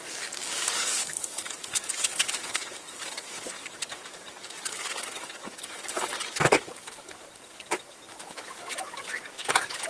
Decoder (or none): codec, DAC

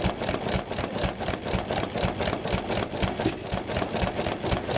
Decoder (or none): none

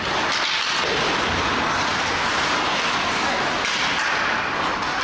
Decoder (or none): none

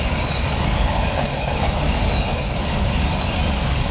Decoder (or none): codec, DAC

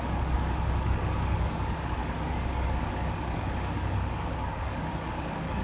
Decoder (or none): codec, DAC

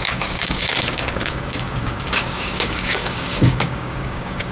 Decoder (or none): codec, DAC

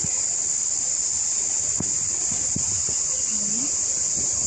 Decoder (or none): none